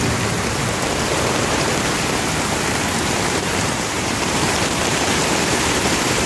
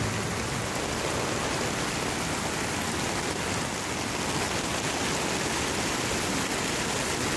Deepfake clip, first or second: first